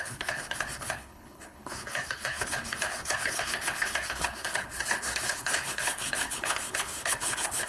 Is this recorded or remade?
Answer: remade